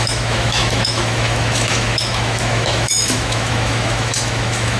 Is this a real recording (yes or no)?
no